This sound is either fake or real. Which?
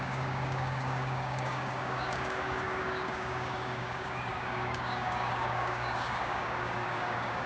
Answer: fake